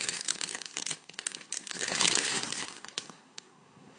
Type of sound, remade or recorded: remade